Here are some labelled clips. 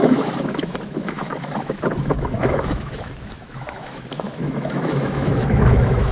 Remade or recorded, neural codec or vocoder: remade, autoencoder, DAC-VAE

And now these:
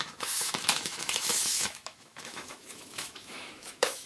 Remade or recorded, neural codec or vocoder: remade, autoencoder, DAC-VAE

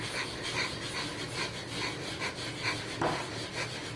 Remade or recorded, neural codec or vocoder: recorded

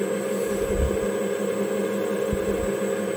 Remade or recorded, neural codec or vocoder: recorded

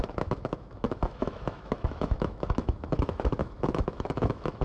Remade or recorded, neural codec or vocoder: remade, autoencoder, DAC-VAE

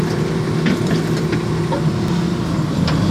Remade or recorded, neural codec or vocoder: recorded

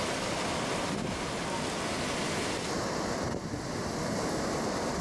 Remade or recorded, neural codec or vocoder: recorded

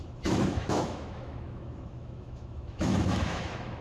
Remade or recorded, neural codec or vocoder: remade, autoencoder, DAC-VAE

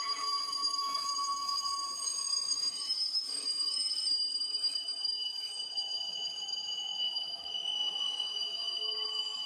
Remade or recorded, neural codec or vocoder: remade, autoencoder, DAC-VAE